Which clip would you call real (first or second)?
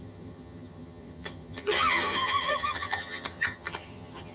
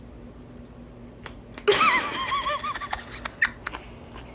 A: second